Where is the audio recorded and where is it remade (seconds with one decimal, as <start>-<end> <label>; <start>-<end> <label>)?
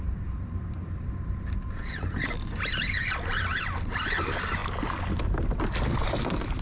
0.0-6.6 recorded